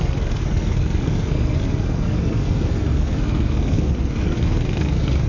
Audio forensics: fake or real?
fake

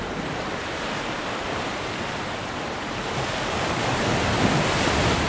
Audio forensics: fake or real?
real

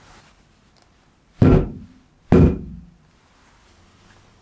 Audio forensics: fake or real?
real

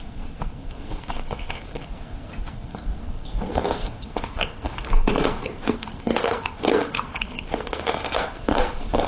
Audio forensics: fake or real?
fake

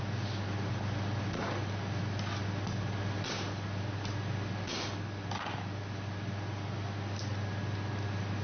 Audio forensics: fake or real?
real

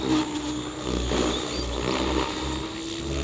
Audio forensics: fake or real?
real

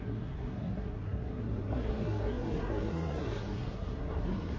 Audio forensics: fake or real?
fake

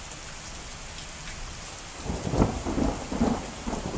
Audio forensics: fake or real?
real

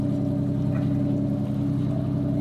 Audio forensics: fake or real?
real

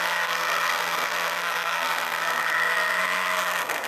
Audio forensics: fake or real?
fake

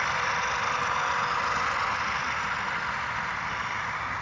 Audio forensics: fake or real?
real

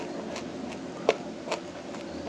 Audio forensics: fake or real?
real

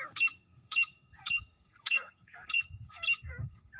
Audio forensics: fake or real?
fake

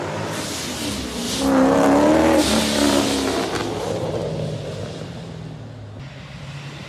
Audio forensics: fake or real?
real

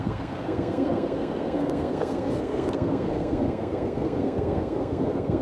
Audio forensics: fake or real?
fake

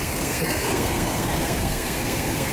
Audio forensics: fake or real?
fake